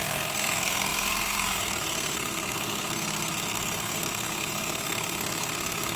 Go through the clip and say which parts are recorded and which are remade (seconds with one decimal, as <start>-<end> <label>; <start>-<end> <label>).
0.0-6.0 remade